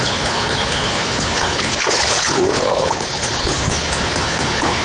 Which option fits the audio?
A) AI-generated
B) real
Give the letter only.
A